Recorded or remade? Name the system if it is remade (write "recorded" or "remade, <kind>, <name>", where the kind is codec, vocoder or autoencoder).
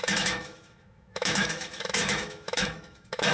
remade, autoencoder, DAC-VAE